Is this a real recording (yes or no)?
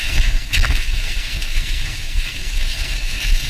no